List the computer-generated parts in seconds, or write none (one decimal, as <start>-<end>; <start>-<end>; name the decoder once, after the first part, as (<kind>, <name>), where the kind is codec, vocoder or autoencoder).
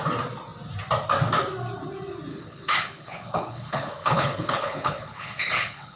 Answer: 2.3-6.0 (codec, HILCodec)